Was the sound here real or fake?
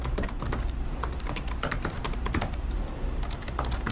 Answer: real